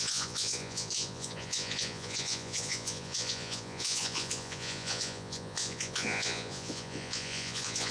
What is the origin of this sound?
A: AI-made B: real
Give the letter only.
A